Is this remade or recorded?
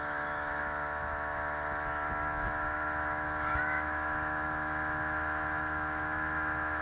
remade